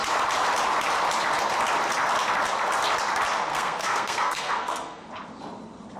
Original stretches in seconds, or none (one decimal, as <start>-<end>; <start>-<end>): 0.0-3.5; 5.1-6.0